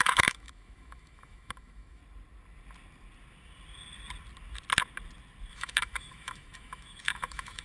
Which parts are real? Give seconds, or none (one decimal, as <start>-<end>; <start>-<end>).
2.0-5.5